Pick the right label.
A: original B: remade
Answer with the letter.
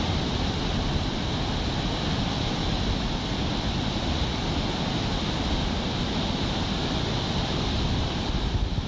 A